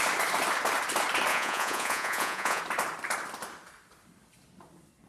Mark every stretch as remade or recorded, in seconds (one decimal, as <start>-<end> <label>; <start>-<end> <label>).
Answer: 0.0-1.3 recorded; 1.3-2.6 remade; 2.6-5.1 recorded